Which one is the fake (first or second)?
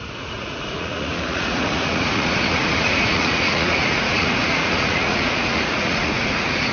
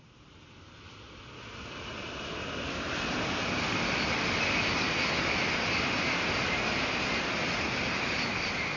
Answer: first